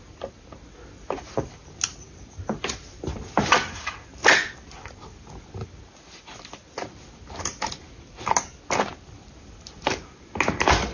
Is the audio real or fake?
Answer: real